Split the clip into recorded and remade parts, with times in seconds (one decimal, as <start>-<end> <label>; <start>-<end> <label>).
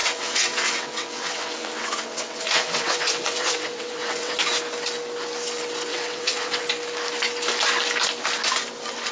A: 0.0-4.4 remade; 4.4-5.9 recorded; 5.9-6.6 remade; 6.6-9.1 recorded